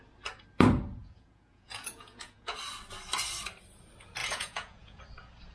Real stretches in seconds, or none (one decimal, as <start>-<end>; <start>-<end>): 0.0-1.0; 2.6-4.2; 5.0-5.5

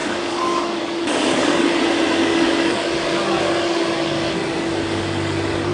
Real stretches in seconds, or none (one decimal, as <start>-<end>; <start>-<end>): 1.8-2.2